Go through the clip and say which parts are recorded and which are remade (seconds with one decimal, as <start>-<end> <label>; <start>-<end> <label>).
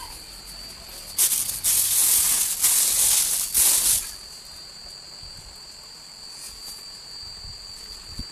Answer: 0.0-8.3 recorded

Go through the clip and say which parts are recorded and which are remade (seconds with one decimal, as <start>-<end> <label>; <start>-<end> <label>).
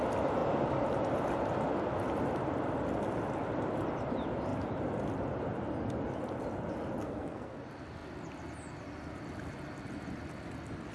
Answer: 0.0-7.0 recorded; 7.0-7.6 remade; 7.6-10.9 recorded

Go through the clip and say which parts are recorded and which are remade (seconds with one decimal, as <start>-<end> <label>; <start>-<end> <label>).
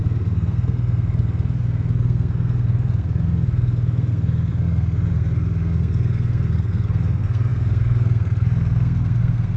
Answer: 0.0-9.6 remade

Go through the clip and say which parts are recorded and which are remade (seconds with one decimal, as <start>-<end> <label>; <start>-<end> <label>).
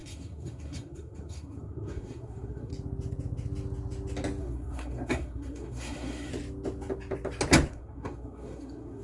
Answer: 0.0-2.7 remade; 2.7-4.4 recorded; 4.4-6.3 remade; 6.3-7.7 recorded; 7.7-9.0 remade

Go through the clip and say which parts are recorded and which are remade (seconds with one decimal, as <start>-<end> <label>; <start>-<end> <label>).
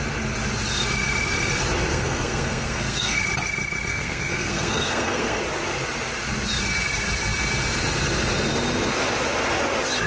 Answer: 0.0-1.9 recorded; 1.9-3.2 remade; 3.2-3.9 recorded; 3.9-5.4 remade; 5.4-10.1 recorded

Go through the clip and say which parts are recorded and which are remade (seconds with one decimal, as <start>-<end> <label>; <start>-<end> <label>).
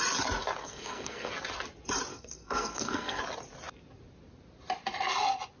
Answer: 0.0-0.6 recorded; 0.6-1.3 remade; 1.3-2.1 recorded; 2.1-3.2 remade; 3.2-5.6 recorded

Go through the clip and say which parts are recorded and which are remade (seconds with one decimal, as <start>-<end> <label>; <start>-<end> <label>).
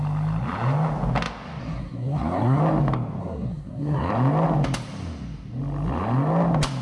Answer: 0.0-1.6 recorded; 1.6-2.6 remade; 2.6-3.2 recorded; 3.2-4.1 remade; 4.1-6.8 recorded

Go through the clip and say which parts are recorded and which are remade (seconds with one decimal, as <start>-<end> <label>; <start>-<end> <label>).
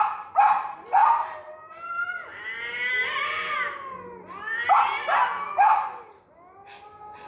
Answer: 0.0-7.3 recorded